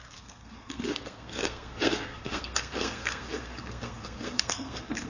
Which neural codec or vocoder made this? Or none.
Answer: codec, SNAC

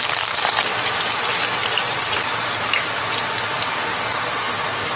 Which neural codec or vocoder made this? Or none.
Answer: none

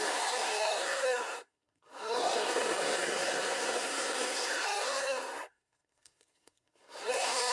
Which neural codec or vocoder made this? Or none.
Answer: codec, SNAC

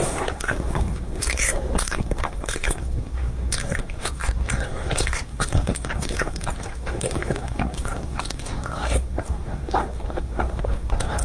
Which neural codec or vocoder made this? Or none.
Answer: codec, SNAC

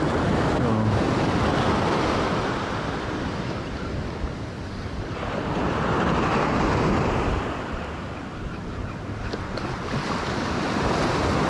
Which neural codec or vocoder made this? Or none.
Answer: none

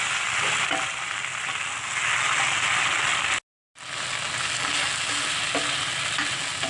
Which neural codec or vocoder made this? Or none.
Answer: none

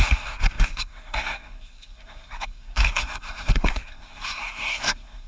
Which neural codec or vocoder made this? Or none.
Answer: codec, SNAC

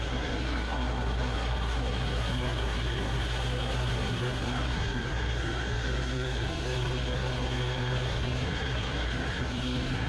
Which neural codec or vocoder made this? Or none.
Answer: codec, SNAC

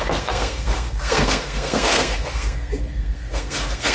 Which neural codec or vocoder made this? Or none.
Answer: codec, SNAC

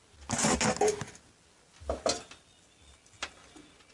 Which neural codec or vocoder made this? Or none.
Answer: none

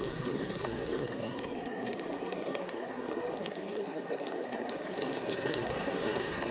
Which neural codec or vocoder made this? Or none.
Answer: codec, SNAC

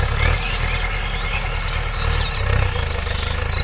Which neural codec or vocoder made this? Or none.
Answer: none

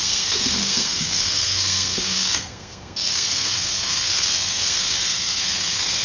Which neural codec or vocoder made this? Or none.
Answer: codec, SNAC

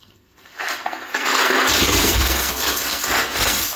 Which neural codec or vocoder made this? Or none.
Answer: codec, SNAC